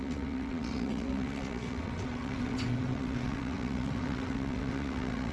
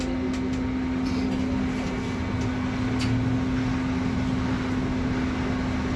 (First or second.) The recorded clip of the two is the second